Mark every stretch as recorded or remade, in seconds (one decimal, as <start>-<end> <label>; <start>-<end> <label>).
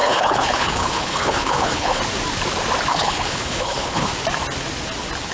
0.0-2.0 remade; 2.0-2.9 recorded; 2.9-4.1 remade; 4.1-5.3 recorded